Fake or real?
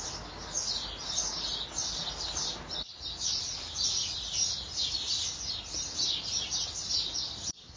real